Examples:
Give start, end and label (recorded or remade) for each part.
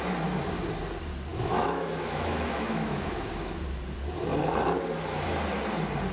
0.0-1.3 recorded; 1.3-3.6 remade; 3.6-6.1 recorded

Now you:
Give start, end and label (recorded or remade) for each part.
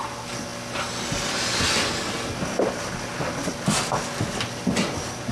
0.0-5.3 recorded